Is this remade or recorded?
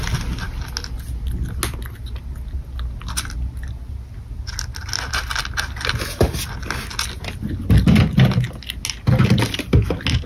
recorded